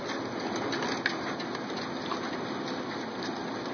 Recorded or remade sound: recorded